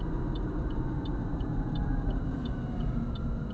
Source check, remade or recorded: recorded